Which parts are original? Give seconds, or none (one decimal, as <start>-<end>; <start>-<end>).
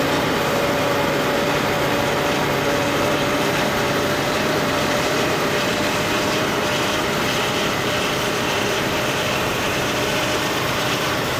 5.7-7.7